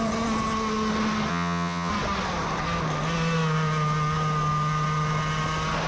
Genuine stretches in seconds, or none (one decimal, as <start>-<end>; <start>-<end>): 0.0-1.3; 1.9-5.9